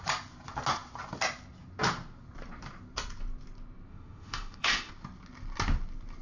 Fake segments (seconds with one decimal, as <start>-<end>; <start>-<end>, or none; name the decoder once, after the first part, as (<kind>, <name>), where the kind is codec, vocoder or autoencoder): 3.9-4.9 (autoencoder, DAC-VAE)